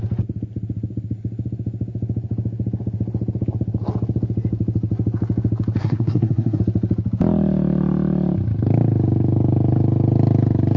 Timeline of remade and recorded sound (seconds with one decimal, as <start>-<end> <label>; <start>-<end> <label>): 0.0-5.8 recorded; 5.8-6.6 remade; 6.6-10.8 recorded